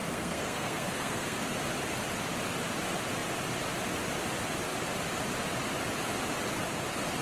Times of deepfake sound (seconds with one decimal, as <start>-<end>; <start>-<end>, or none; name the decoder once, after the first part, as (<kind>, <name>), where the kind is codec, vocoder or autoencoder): 0.0-1.4 (codec, SNAC)